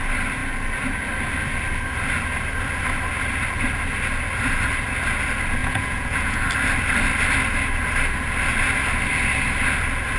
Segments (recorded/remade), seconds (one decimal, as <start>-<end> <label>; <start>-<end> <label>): 0.0-5.6 recorded; 5.6-6.4 remade; 6.4-10.2 recorded